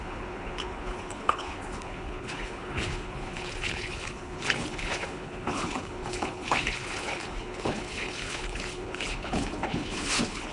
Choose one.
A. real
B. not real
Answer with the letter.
B